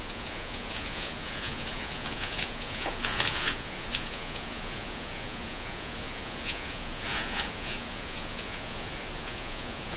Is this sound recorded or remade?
remade